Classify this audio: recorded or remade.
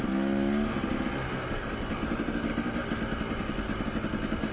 recorded